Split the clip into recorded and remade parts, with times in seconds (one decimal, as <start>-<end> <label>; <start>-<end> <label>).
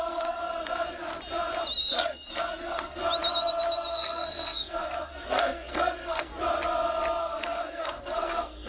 0.0-0.4 remade; 0.4-1.8 recorded; 1.8-3.0 remade; 3.0-3.9 recorded; 3.9-6.3 remade; 6.3-7.2 recorded; 7.2-8.7 remade